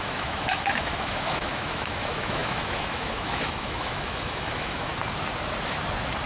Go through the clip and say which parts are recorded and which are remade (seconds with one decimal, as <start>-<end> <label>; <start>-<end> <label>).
0.0-4.9 remade; 4.9-6.3 recorded